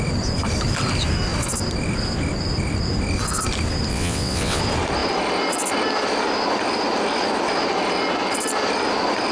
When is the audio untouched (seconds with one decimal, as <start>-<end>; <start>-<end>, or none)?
0.0-3.9; 4.6-9.3